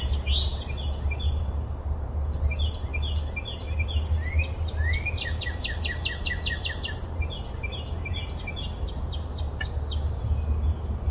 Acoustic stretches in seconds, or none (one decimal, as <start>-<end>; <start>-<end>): 0.0-11.1